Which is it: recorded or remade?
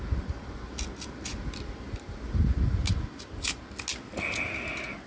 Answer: recorded